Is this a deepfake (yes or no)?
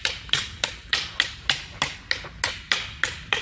no